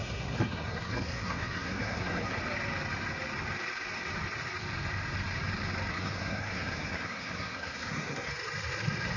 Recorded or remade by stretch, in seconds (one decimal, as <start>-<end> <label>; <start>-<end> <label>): 0.0-2.4 remade; 2.4-5.9 recorded; 5.9-8.3 remade; 8.3-9.2 recorded